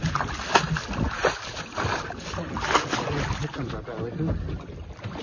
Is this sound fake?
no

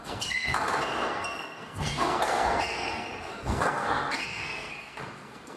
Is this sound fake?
yes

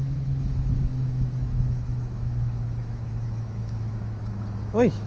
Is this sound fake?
yes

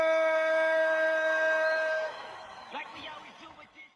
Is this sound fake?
yes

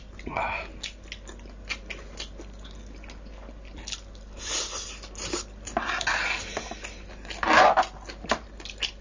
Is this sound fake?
no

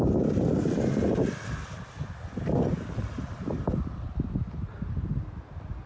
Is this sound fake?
no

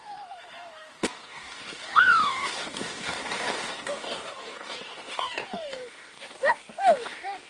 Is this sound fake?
yes